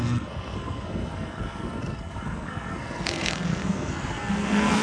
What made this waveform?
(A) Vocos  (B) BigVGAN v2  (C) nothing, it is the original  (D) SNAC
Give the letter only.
D